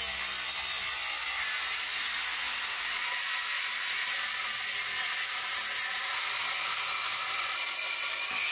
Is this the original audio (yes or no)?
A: yes